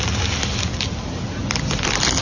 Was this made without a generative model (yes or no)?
yes